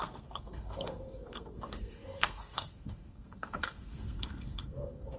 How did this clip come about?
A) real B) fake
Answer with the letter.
B